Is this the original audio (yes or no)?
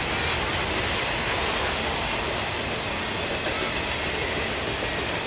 yes